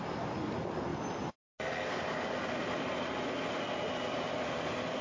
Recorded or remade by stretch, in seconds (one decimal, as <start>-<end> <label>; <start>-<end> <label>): 0.0-5.0 recorded